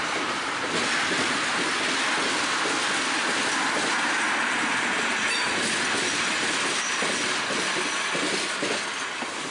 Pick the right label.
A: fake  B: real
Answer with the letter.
B